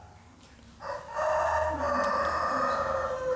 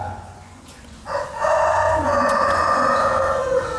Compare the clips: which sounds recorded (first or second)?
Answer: first